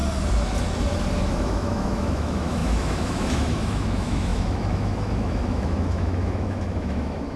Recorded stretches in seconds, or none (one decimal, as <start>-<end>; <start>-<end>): 0.0-1.3

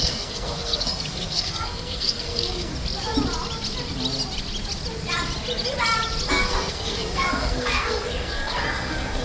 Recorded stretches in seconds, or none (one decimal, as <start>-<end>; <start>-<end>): 2.7-6.3

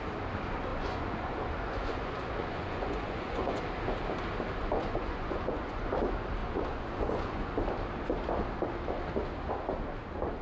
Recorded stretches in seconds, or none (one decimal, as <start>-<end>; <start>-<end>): 0.0-0.7; 3.6-4.6; 5.9-6.4; 7.5-10.4